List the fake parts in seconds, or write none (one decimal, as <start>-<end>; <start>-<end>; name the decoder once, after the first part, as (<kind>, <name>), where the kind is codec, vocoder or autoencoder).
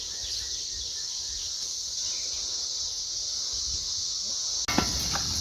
none